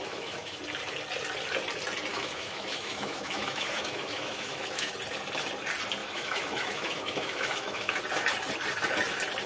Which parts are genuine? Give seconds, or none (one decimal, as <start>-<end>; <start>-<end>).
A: 0.6-2.1; 4.9-6.0; 8.0-9.5